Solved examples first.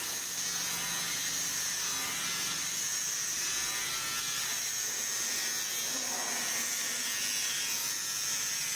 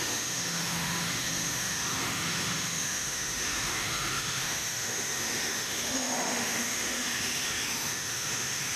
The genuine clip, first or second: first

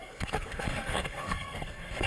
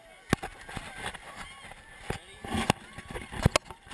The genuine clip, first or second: second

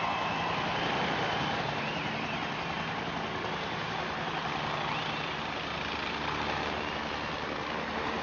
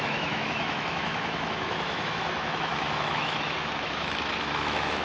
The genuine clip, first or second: first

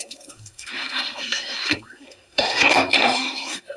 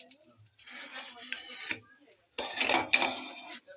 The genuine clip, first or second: second